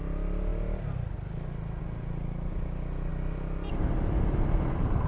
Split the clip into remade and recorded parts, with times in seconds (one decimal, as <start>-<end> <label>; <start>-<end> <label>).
0.0-5.1 recorded

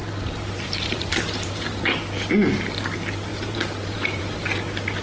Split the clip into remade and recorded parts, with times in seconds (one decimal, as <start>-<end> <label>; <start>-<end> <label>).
0.0-1.8 remade; 1.8-3.3 recorded; 3.3-4.2 remade; 4.2-5.0 recorded

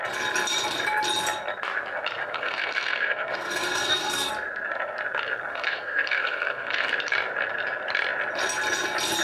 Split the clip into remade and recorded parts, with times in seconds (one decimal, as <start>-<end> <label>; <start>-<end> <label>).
0.0-2.2 recorded; 2.2-4.3 remade; 4.3-5.5 recorded; 5.5-6.9 remade; 6.9-9.2 recorded

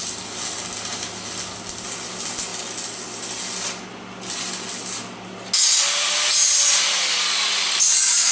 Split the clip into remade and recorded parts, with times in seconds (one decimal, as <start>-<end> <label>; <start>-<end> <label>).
0.0-8.3 recorded

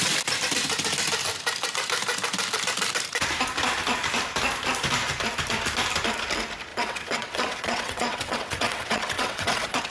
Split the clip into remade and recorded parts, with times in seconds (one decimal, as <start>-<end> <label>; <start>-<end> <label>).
0.0-6.7 recorded; 6.7-9.9 remade